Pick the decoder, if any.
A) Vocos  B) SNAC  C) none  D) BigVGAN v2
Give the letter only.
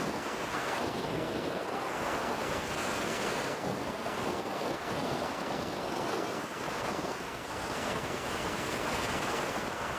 B